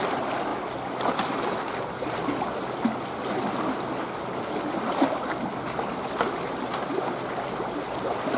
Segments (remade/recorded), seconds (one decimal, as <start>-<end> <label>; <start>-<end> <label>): 0.0-8.4 recorded